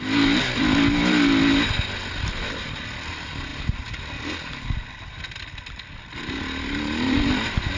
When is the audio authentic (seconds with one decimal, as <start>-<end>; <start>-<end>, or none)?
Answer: 0.0-7.8